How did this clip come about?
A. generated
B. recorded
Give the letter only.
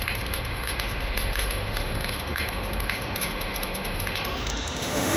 A